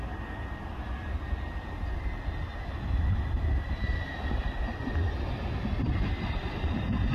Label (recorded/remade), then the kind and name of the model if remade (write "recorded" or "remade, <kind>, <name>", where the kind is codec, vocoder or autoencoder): remade, vocoder, BigVGAN v2